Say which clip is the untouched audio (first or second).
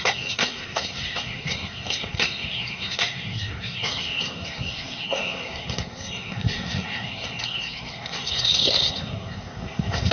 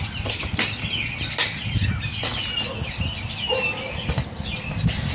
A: second